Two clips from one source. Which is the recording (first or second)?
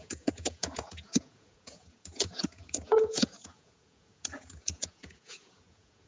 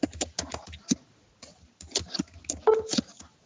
second